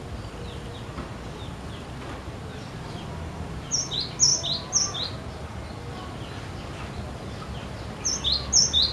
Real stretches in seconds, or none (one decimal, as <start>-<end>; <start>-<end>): 0.0-8.9